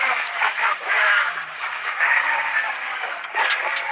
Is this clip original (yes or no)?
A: no